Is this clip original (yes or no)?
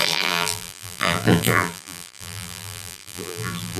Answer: no